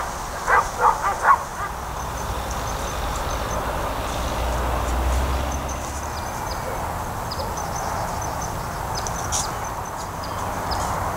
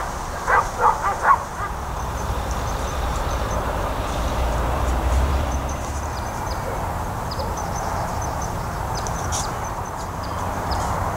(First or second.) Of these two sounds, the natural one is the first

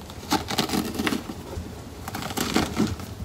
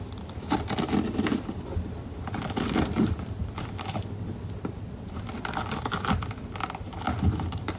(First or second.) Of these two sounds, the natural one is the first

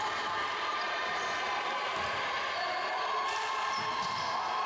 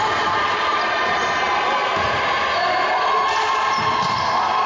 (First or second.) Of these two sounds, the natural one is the second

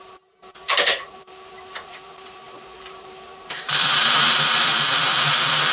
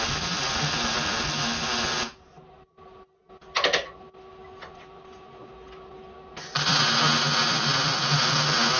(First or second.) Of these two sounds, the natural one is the second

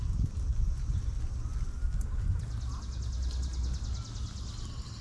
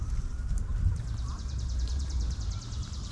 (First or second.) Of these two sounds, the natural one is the first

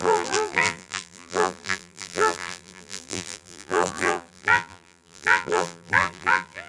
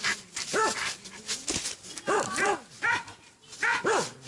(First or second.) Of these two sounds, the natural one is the second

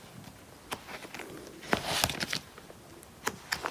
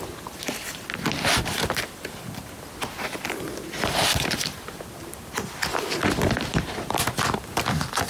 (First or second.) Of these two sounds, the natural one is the first